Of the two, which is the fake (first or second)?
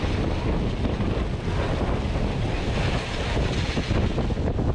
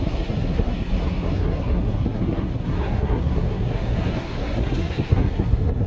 second